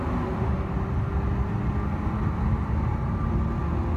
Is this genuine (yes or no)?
yes